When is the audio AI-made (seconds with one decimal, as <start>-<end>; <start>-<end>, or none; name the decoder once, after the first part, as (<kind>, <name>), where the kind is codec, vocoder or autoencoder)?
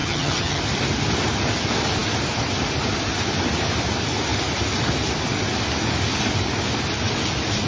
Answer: 0.0-0.6 (vocoder, HiFi-GAN)